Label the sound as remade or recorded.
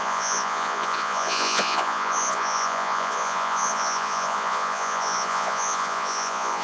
remade